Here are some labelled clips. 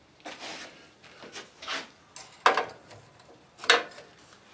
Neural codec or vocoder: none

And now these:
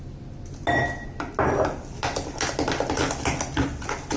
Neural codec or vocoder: none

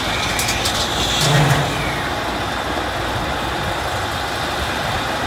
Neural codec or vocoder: none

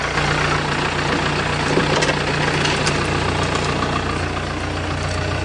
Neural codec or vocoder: none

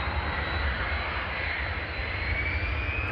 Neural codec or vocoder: none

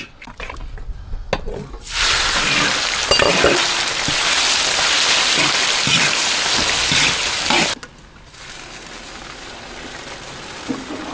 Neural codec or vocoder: none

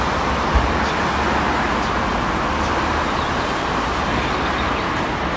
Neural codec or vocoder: none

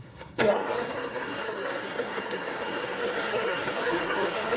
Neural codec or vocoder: codec, SNAC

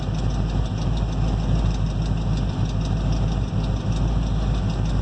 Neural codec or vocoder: none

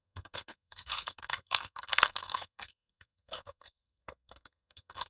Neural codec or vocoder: codec, SNAC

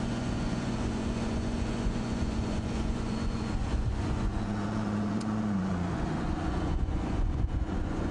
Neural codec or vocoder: vocoder, Vocos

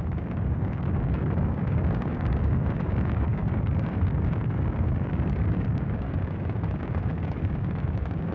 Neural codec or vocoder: codec, DAC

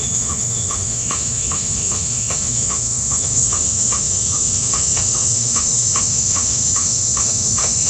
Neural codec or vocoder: autoencoder, DAC-VAE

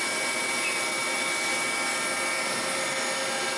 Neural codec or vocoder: none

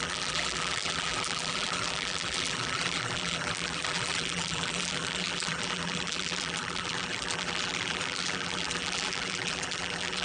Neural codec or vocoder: vocoder, BigVGAN v2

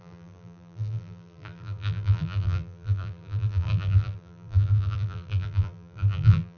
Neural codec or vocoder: vocoder, BigVGAN v2